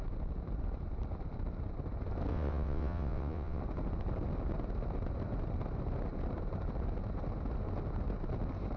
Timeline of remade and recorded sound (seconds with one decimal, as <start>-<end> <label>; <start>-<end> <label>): 0.0-2.3 recorded; 2.3-3.6 remade; 3.6-8.8 recorded